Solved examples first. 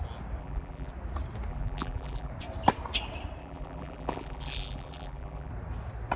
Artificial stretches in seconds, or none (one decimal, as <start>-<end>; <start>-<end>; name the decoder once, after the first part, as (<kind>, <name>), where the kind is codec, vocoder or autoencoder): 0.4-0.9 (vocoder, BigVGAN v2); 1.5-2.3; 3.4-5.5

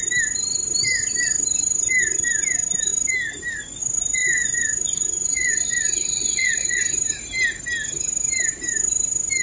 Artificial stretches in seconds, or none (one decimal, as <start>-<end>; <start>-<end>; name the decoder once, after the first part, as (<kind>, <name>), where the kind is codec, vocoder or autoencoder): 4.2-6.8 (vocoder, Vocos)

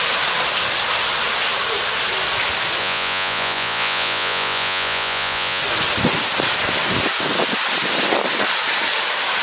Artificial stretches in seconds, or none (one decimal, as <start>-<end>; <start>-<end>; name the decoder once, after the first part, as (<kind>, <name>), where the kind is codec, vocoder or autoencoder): 2.8-5.6 (vocoder, Vocos)

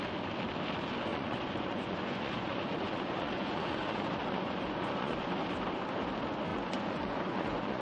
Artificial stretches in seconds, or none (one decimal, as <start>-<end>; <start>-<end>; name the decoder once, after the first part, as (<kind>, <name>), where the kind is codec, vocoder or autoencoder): 1.1-5.3 (vocoder, Vocos); 6.5-7.8

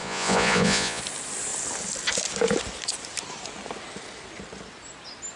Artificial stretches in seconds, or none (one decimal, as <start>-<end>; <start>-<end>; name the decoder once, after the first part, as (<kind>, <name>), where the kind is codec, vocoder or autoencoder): 0.0-1.0 (vocoder, Vocos)

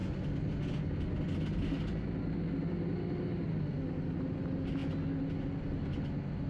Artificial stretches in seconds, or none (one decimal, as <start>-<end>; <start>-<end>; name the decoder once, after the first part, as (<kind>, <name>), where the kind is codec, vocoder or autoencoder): none